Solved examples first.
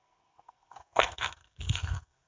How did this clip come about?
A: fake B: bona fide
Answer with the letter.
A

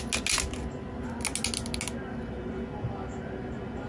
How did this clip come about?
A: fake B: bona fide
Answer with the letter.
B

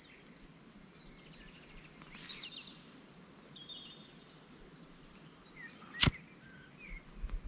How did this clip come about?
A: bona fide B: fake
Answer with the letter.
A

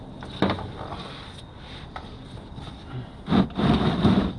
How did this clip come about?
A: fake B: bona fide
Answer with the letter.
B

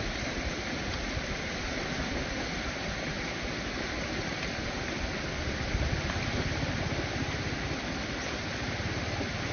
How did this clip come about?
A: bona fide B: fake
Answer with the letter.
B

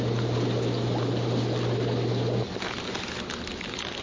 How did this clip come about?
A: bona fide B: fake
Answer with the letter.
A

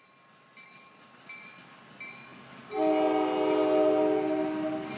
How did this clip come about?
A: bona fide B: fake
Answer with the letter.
A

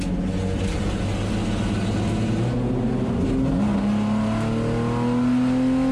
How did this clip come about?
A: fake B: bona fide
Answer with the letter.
B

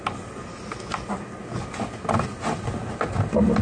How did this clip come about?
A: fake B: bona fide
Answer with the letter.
B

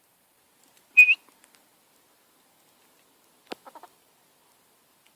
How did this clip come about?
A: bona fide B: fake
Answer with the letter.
A